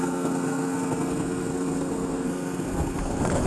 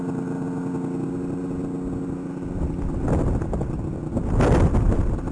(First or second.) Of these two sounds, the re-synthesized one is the first